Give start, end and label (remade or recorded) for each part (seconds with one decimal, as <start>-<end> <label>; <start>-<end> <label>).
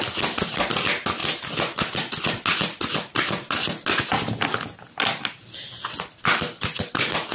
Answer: 0.0-7.3 recorded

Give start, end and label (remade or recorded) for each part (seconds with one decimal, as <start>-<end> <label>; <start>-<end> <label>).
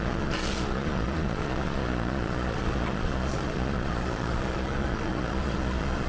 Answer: 0.0-6.1 remade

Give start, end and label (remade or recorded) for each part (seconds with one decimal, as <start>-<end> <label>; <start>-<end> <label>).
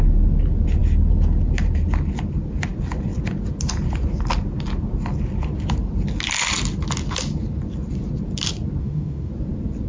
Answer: 0.0-8.8 recorded; 8.8-9.3 remade; 9.3-9.9 recorded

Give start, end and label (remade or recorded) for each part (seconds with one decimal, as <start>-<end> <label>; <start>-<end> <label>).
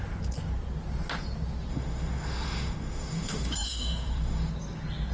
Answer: 0.0-1.7 recorded; 1.7-4.5 remade; 4.5-5.1 recorded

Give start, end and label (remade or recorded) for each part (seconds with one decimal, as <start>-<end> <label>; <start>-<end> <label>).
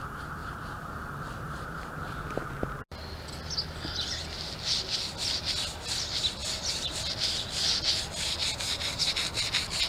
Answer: 0.0-0.4 recorded; 0.4-2.5 remade; 2.5-8.4 recorded; 8.4-9.0 remade; 9.0-9.9 recorded